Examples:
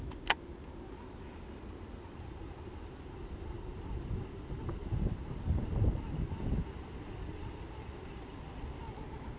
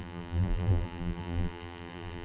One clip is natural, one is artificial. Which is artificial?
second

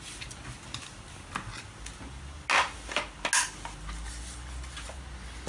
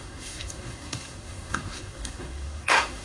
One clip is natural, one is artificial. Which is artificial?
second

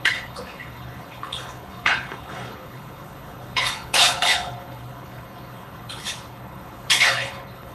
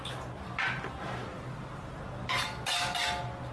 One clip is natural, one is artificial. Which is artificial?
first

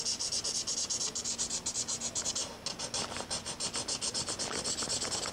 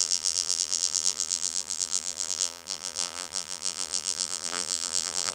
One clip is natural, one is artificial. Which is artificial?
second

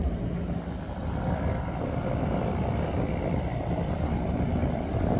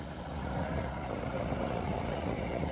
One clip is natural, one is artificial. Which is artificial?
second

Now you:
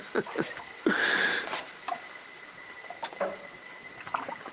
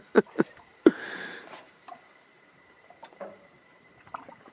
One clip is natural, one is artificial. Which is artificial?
second